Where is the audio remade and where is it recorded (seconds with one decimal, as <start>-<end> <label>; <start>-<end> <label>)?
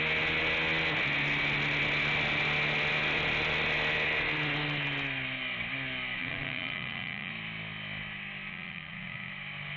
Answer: 0.0-6.2 recorded; 6.2-7.3 remade; 7.3-8.5 recorded; 8.5-9.3 remade; 9.3-9.8 recorded